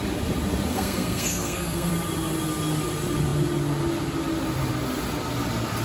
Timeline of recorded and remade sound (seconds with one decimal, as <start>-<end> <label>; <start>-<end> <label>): 0.0-0.7 recorded; 0.7-1.9 remade; 1.9-5.8 recorded